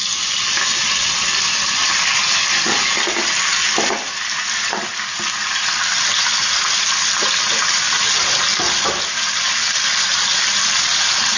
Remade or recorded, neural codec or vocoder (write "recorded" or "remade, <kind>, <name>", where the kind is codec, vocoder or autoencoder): recorded